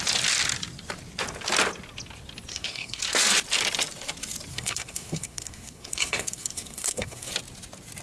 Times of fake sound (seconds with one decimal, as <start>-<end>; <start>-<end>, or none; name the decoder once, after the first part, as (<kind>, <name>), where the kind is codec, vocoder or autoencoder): 2.5-3.0 (codec, SNAC); 4.5-7.3